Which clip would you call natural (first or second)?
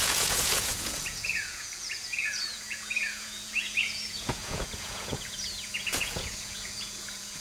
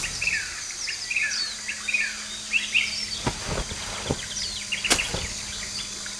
second